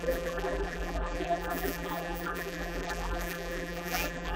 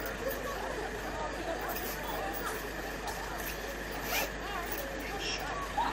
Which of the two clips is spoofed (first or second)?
first